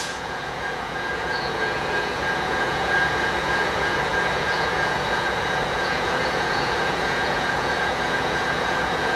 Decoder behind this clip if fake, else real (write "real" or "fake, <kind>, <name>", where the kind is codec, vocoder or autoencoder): fake, vocoder, Vocos